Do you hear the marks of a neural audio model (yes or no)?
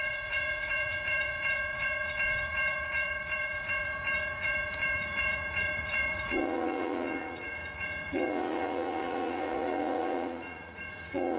yes